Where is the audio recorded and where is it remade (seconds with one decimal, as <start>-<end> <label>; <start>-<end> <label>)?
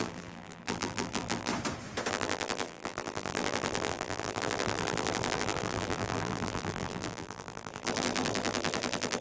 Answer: 0.0-1.5 remade; 1.5-2.1 recorded; 2.1-9.2 remade